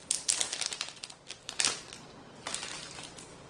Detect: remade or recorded recorded